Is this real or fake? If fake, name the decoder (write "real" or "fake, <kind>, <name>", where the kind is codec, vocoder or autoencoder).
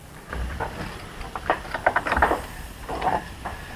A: fake, vocoder, BigVGAN v2